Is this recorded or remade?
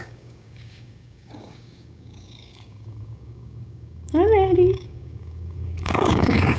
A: remade